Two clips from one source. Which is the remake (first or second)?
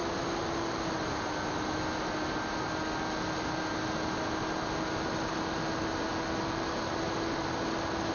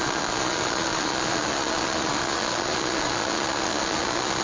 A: second